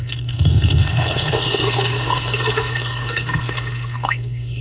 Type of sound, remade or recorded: remade